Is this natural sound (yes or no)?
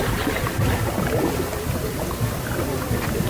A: yes